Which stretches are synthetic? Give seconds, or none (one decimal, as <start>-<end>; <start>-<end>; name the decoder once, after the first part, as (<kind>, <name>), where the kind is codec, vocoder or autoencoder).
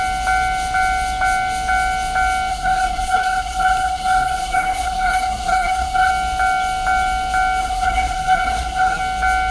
2.5-6.1 (codec, SNAC); 7.6-9.0